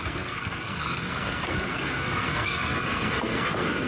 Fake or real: fake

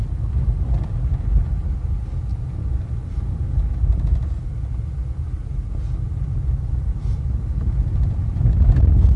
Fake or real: real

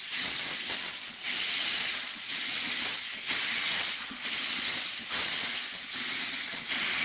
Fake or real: fake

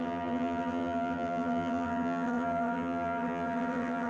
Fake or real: fake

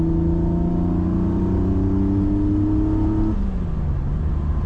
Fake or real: real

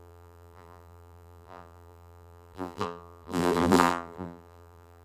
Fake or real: fake